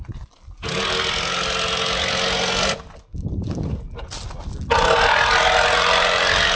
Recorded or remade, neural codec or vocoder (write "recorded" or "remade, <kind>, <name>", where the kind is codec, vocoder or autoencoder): recorded